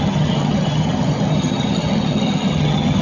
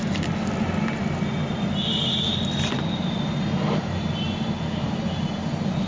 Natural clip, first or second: second